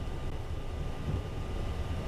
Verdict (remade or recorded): recorded